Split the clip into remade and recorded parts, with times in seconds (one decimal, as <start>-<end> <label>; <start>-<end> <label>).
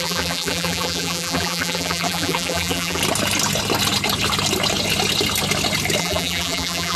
0.0-3.0 remade; 3.0-6.0 recorded; 6.0-7.0 remade